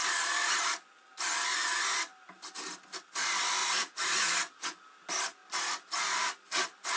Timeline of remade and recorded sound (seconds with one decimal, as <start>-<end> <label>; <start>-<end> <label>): 0.0-3.6 recorded; 3.6-4.4 remade; 4.4-7.0 recorded

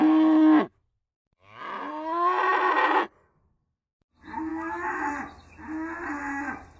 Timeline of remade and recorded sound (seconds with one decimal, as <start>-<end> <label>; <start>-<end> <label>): 0.0-4.5 recorded; 4.5-5.1 remade; 5.1-6.8 recorded

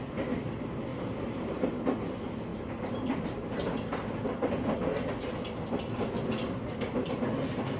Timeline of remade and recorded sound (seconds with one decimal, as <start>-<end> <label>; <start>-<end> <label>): 0.0-0.9 recorded; 0.9-1.7 remade; 1.7-2.5 recorded; 2.5-3.4 remade; 3.4-7.8 recorded